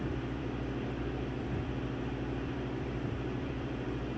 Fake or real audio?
fake